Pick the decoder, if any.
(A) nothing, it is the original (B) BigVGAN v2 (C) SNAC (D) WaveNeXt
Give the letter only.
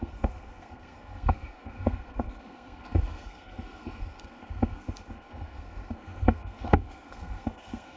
C